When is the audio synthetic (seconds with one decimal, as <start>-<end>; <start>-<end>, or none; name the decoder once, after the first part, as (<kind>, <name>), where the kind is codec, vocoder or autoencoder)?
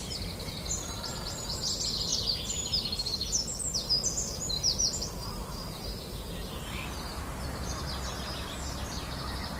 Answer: 5.2-5.8 (vocoder, BigVGAN v2); 7.1-7.7